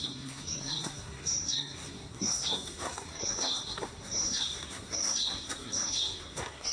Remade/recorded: remade